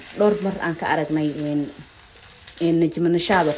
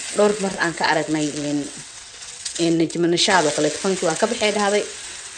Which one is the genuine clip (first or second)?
first